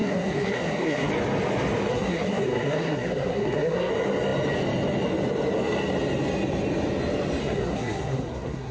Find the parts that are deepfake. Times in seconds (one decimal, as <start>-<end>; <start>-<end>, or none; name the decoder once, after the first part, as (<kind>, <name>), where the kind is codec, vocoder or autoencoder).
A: 0.0-1.1 (codec, SNAC); 1.9-3.9; 7.4-8.7